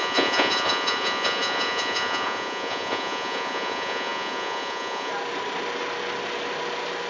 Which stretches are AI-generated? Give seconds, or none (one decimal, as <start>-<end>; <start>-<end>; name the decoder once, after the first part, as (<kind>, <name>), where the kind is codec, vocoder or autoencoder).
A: 0.0-5.1 (vocoder, Vocos)